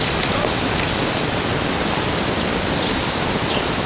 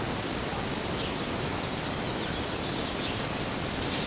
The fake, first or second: first